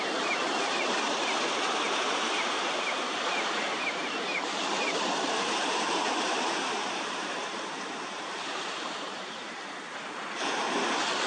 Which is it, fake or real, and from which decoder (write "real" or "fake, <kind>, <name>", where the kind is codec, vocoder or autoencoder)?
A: fake, vocoder, BigVGAN v2